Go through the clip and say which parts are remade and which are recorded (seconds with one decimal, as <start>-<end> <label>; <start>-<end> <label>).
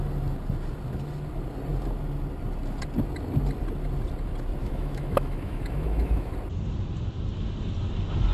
0.0-4.6 recorded; 4.6-6.3 remade; 6.3-8.3 recorded